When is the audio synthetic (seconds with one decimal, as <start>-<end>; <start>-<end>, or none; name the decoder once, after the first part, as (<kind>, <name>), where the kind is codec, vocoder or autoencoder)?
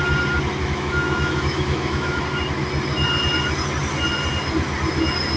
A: 0.6-2.2 (autoencoder, DAC-VAE)